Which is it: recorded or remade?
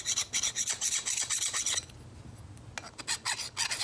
recorded